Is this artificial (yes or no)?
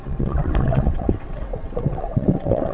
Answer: yes